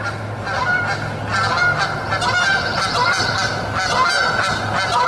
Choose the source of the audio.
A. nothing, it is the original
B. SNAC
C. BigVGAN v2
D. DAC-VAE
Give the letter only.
A